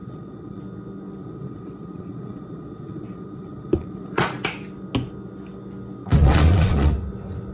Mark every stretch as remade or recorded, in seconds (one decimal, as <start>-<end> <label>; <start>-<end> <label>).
0.0-0.6 remade; 0.6-1.2 recorded; 1.2-4.4 remade; 4.4-6.0 recorded; 6.0-6.9 remade; 6.9-7.5 recorded